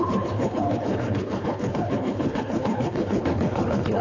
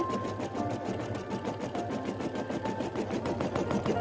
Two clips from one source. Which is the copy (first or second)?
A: first